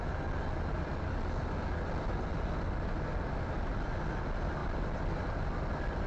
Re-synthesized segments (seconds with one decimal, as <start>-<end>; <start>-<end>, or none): 4.6-5.2